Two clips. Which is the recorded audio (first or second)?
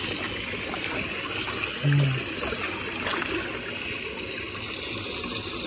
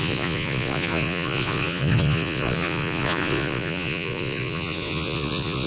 first